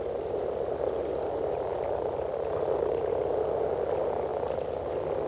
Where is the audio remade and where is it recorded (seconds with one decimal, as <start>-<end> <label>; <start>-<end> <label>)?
0.0-5.3 recorded